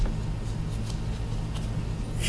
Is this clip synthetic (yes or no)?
no